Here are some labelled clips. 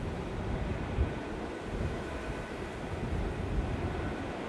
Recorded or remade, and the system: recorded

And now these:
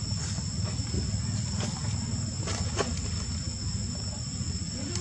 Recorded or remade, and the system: recorded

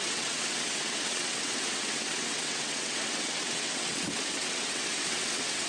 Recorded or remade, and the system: remade, vocoder, WaveNeXt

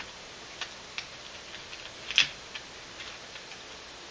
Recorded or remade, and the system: recorded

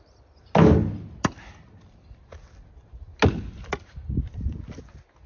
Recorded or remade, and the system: recorded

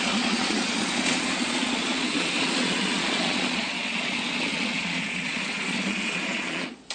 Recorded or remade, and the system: remade, vocoder, Vocos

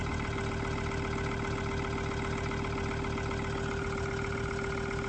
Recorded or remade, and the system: recorded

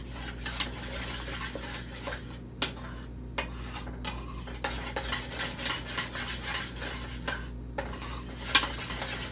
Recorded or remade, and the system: recorded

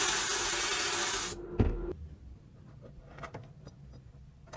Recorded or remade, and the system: recorded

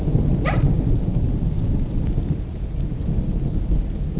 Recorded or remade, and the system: recorded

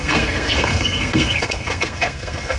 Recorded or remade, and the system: remade, codec, SNAC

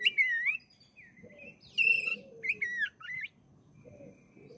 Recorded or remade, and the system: recorded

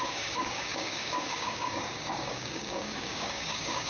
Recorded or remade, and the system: remade, codec, DAC